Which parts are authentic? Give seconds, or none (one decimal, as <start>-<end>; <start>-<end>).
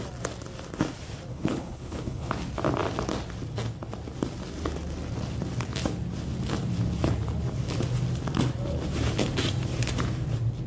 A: 0.0-1.3; 2.3-10.7